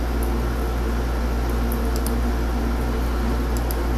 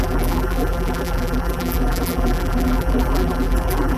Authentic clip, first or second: first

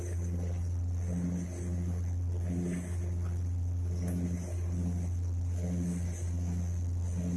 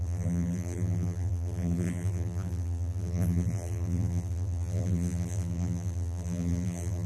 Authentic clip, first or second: first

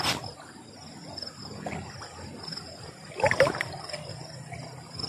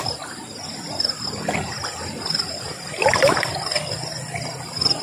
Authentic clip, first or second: first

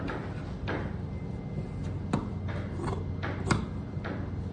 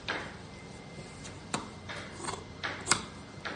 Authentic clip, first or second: first